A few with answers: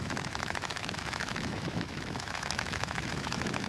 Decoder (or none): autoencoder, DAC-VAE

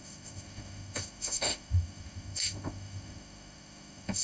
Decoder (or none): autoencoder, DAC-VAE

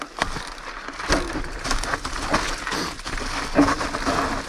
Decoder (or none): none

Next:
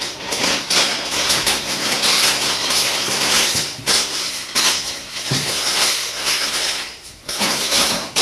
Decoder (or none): codec, SNAC